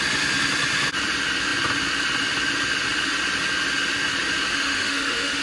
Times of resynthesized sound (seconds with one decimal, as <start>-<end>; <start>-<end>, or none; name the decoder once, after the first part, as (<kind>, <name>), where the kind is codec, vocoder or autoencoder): 4.5-5.4 (autoencoder, DAC-VAE)